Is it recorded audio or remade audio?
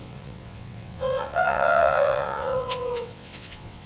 remade